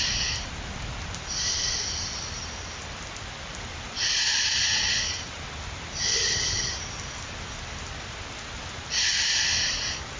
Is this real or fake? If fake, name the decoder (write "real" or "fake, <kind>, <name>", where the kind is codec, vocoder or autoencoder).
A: real